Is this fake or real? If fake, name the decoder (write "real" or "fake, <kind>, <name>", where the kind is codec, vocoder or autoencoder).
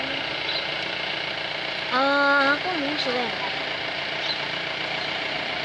real